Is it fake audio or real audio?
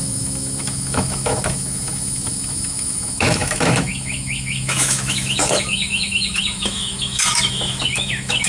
fake